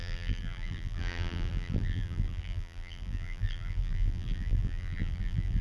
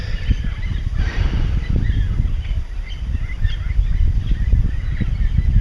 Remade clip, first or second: first